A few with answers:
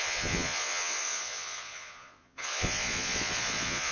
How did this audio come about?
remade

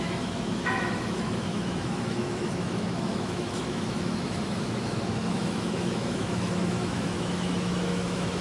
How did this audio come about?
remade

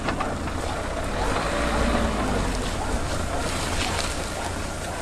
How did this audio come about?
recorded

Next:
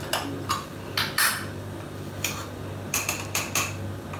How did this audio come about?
recorded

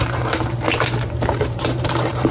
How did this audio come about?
remade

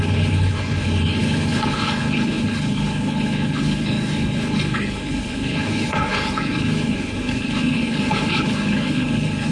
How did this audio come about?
remade